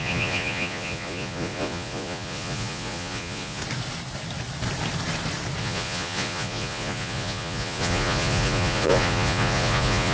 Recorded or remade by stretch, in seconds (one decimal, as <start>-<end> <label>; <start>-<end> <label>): 0.0-3.6 remade; 3.6-5.6 recorded; 5.6-10.1 remade

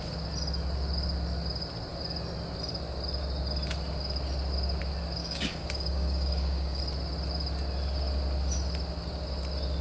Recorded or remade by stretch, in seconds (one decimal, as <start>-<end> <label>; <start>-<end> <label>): 0.0-5.2 recorded; 5.2-6.8 remade; 6.8-9.8 recorded

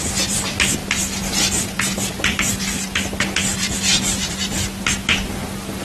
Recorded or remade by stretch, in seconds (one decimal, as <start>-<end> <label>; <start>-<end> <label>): 0.0-5.8 recorded

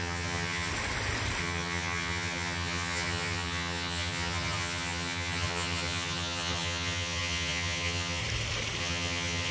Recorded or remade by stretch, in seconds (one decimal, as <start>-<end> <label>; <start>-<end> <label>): 0.0-0.7 remade; 0.7-1.4 recorded; 1.4-8.2 remade; 8.2-8.8 recorded; 8.8-9.5 remade

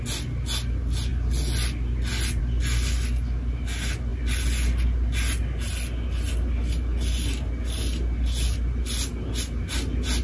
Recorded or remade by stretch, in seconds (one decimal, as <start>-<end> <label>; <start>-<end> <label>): 0.0-10.2 recorded

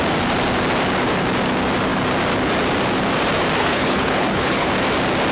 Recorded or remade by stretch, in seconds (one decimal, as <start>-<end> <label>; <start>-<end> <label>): 0.0-3.6 recorded; 3.6-4.7 remade; 4.7-5.3 recorded

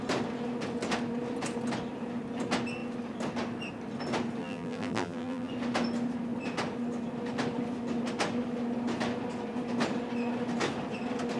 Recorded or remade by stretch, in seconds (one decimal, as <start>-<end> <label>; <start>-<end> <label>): 0.0-4.4 recorded; 4.4-5.5 remade; 5.5-11.4 recorded